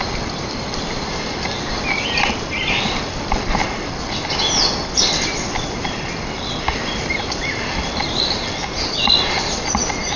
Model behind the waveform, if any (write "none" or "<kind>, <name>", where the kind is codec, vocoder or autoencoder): none